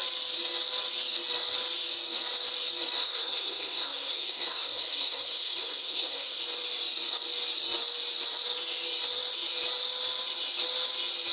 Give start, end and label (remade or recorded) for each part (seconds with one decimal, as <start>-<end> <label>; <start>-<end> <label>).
0.0-3.0 recorded; 3.0-6.4 remade; 6.4-11.3 recorded